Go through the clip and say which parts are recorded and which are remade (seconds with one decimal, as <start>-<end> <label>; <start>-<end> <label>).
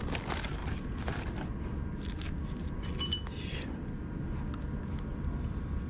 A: 0.0-5.9 recorded